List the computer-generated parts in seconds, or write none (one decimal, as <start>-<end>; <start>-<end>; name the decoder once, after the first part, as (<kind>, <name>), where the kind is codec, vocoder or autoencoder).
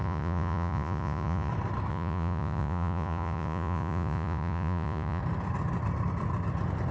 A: 0.0-1.5 (vocoder, Vocos); 1.9-5.2